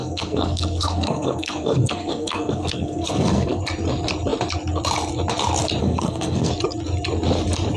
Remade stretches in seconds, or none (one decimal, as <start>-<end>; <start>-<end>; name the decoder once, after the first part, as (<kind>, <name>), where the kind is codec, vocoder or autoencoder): 0.0-3.6 (codec, SNAC); 5.8-6.5